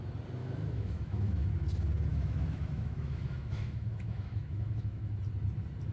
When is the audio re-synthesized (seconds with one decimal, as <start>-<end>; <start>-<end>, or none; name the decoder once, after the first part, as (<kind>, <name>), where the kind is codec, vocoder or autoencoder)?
0.4-1.5 (autoencoder, DAC-VAE); 2.1-5.1